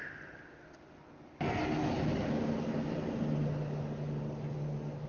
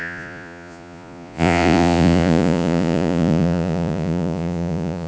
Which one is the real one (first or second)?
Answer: first